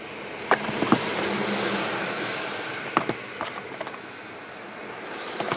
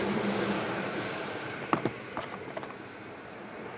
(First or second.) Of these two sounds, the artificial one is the second